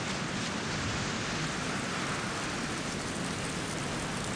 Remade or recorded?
recorded